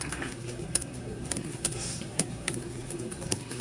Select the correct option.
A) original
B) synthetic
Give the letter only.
B